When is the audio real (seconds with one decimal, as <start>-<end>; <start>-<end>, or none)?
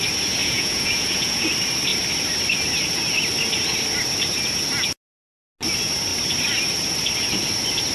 0.0-0.4; 1.5-7.9